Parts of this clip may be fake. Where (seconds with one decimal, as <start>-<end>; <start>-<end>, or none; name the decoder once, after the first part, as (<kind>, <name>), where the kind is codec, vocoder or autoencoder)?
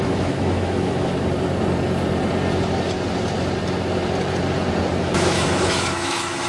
0.0-1.1 (autoencoder, DAC-VAE); 5.0-6.5